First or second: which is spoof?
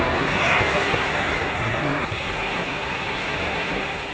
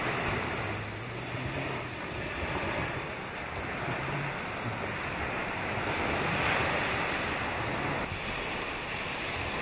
first